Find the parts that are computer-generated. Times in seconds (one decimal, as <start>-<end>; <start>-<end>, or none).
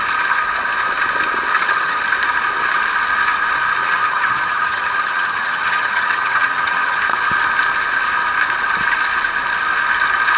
1.5-2.0; 3.8-7.0